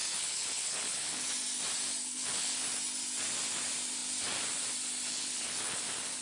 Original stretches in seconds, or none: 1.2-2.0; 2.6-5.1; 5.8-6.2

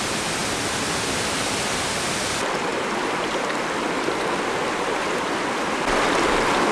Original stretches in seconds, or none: 0.0-6.7

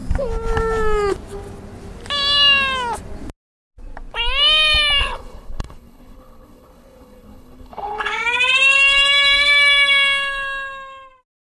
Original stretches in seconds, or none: 0.0-5.0; 8.1-11.6

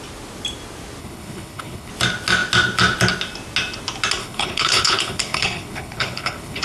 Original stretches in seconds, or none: 0.0-1.0; 1.9-4.2

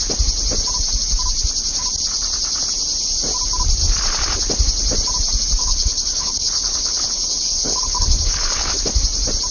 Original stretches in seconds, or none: 0.0-5.6; 8.8-9.5

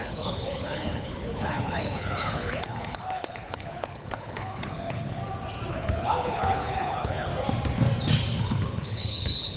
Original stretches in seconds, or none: 5.2-5.7; 7.3-8.4

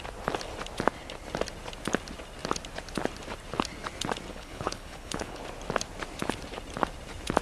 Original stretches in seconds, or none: 0.0-4.3; 5.4-7.4